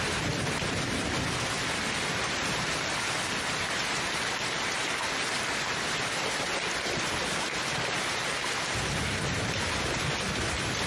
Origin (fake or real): real